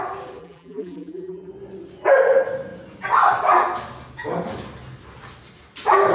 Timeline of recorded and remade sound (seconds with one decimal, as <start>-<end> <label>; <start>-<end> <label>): 0.0-0.4 recorded; 0.4-1.5 remade; 1.5-6.1 recorded